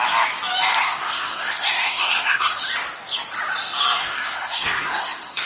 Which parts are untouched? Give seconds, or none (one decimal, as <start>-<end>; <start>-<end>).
0.0-0.8; 2.6-4.0